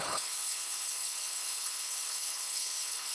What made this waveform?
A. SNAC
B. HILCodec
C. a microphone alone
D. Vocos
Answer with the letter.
B